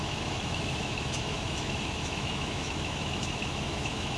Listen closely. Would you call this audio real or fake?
fake